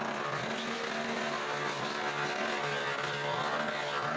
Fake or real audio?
real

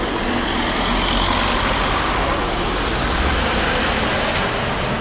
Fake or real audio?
real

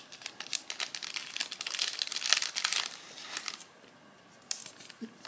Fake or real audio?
real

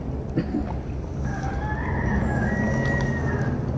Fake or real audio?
real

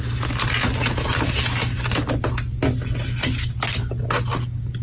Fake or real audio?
real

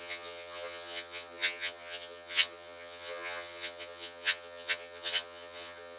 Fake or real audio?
fake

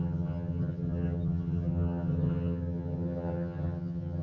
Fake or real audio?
fake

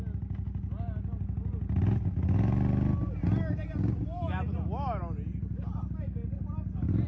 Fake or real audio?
real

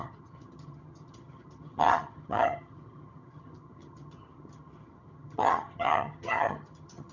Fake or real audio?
fake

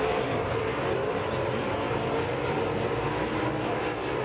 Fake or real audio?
real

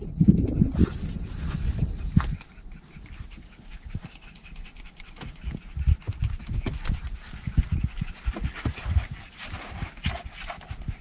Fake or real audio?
real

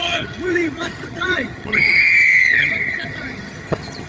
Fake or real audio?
fake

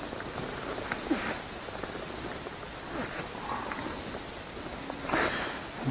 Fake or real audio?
real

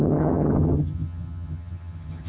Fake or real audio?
fake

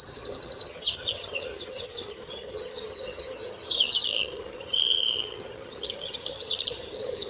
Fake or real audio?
fake